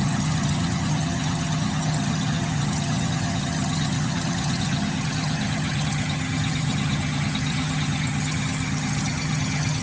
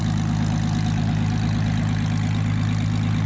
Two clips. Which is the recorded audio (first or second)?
second